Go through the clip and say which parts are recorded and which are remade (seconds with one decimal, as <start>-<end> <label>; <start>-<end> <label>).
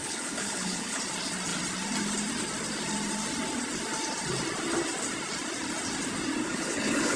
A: 0.0-1.0 remade; 1.0-6.4 recorded; 6.4-7.2 remade